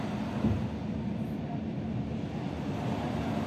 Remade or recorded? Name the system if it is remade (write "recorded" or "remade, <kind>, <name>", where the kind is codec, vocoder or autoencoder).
recorded